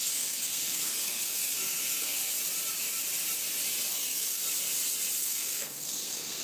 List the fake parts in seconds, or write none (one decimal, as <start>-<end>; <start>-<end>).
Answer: 0.0-2.2; 3.9-4.4; 5.2-6.4